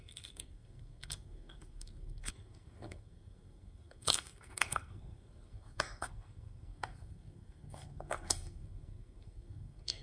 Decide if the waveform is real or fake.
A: fake